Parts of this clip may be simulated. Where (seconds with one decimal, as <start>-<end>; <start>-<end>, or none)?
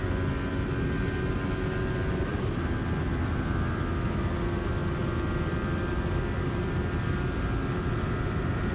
none